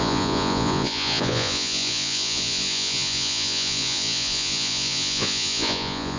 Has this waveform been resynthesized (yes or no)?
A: yes